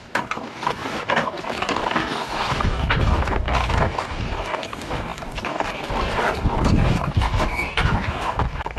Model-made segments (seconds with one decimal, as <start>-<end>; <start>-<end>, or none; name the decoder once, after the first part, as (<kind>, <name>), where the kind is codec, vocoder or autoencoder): 0.0-8.8 (codec, DAC)